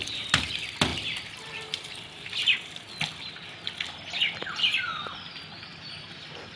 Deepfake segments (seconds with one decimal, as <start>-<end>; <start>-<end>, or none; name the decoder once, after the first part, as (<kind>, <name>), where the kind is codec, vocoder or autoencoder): 0.9-2.9 (vocoder, BigVGAN v2)